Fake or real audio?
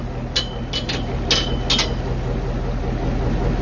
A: real